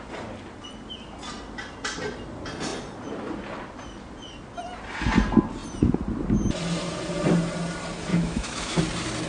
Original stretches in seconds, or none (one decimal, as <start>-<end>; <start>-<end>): 0.0-8.1; 8.8-9.3